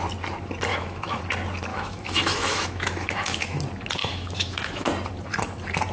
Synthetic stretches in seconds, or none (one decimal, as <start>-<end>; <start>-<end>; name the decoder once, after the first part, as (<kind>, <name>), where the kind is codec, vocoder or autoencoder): 0.7-1.2 (autoencoder, DAC-VAE); 1.7-3.6; 4.0-4.9